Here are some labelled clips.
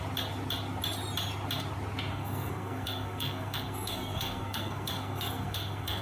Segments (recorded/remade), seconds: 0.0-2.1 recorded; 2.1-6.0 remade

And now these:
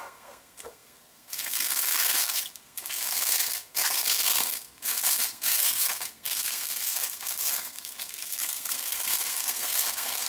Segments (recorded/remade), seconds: 0.0-10.3 remade

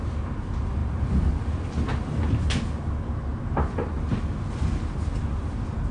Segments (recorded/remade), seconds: 0.0-5.9 recorded

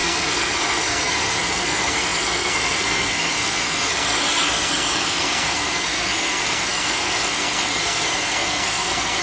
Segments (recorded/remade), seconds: 0.0-9.2 remade